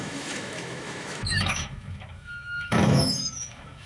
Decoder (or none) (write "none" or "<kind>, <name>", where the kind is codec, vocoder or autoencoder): autoencoder, DAC-VAE